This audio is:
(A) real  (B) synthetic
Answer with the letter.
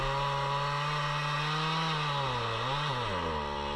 A